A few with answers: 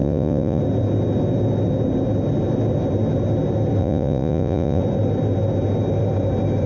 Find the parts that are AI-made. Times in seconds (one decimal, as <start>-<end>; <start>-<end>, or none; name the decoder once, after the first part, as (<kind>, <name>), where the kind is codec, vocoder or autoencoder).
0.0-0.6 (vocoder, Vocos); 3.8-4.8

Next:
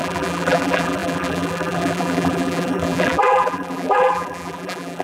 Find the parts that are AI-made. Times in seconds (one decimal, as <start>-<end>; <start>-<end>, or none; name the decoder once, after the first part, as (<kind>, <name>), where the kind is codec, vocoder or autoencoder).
0.0-5.0 (vocoder, BigVGAN v2)

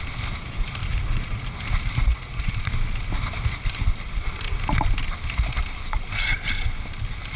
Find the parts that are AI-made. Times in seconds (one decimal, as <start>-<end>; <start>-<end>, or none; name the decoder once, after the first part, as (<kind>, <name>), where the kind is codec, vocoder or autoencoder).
0.8-1.5 (vocoder, Vocos); 2.1-2.7

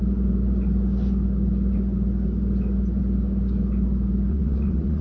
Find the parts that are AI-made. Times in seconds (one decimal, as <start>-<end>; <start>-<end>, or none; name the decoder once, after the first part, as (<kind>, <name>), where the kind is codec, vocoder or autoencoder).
4.3-5.0 (vocoder, Vocos)

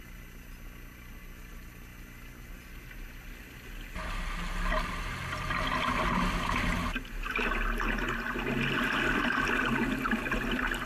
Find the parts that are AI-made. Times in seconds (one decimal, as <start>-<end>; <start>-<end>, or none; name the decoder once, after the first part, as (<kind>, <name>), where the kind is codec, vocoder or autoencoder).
none

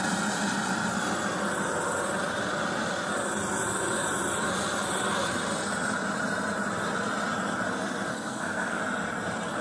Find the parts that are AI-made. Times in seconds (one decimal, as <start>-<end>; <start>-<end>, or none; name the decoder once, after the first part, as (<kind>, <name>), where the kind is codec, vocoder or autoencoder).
8.1-8.8 (codec, SNAC)